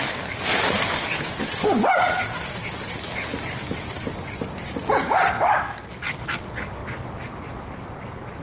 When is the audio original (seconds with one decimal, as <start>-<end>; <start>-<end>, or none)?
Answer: 0.0-8.4